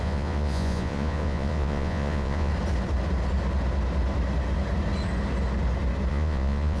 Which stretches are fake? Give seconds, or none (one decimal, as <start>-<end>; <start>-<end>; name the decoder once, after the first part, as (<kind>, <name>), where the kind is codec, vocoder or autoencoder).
0.0-2.5 (vocoder, Vocos); 6.1-6.8